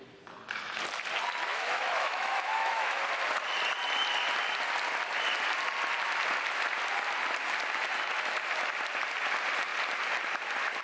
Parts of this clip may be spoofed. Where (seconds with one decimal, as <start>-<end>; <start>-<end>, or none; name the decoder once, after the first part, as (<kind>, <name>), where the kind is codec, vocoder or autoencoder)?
1.5-3.0 (autoencoder, DAC-VAE)